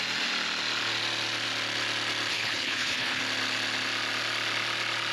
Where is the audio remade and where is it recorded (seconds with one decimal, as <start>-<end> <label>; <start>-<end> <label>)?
0.0-2.3 recorded; 2.3-3.2 remade; 3.2-5.1 recorded